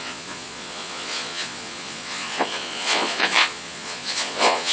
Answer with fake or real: fake